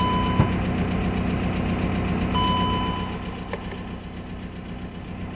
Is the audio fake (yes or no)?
no